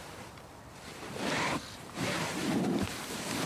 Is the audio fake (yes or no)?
yes